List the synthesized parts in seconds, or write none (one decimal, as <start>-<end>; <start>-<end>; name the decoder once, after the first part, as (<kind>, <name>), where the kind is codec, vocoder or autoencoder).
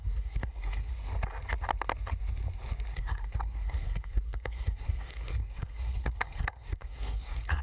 0.0-0.9 (codec, SNAC); 2.9-7.6